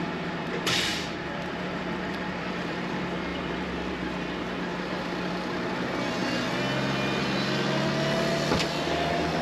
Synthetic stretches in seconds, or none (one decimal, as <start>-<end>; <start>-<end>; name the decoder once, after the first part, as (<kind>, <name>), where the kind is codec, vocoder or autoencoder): 0.9-2.7 (vocoder, BigVGAN v2); 3.3-3.9; 4.7-5.3